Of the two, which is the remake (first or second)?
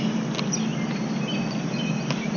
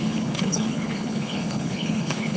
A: second